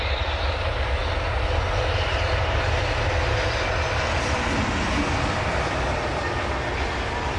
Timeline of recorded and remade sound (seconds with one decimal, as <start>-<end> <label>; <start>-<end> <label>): 0.0-7.4 recorded

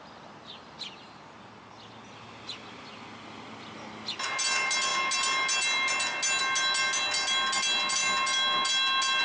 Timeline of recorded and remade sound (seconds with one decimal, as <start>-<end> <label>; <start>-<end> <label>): 0.0-9.2 recorded

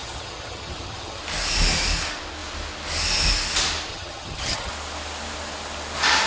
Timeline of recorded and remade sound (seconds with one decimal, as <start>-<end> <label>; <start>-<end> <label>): 0.0-1.2 remade; 1.2-3.9 recorded; 3.9-4.7 remade; 4.7-6.3 recorded

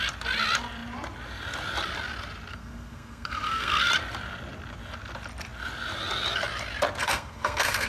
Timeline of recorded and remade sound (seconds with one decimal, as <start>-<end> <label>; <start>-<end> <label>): 0.0-2.5 recorded; 2.5-3.9 remade; 3.9-7.0 recorded; 7.0-7.9 remade

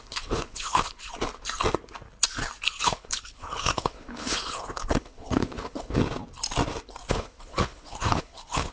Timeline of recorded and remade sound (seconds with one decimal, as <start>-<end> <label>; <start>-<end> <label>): 0.0-1.1 remade; 1.1-2.7 recorded; 2.7-6.0 remade; 6.0-7.1 recorded; 7.1-8.7 remade

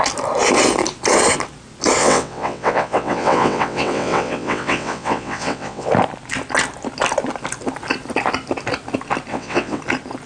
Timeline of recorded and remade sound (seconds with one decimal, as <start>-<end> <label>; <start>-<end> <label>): 0.0-2.0 recorded; 2.0-5.9 remade; 5.9-9.3 recorded; 9.3-9.8 remade; 9.8-10.3 recorded

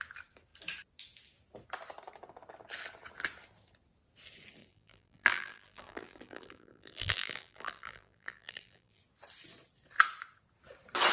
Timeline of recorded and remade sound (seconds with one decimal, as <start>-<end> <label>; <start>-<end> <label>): 0.0-4.6 recorded; 4.6-9.0 remade; 9.0-11.1 recorded

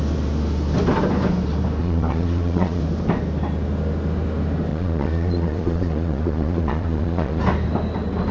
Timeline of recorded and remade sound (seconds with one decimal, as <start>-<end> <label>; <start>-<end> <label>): 0.0-1.8 recorded; 1.8-2.8 remade; 2.8-4.7 recorded; 4.7-7.4 remade; 7.4-8.3 recorded